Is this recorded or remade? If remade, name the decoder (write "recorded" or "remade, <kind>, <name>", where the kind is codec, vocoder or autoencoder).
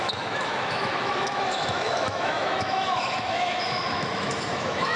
remade, autoencoder, DAC-VAE